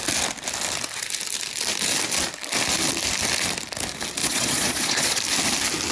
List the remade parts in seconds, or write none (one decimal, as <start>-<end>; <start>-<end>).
4.2-5.2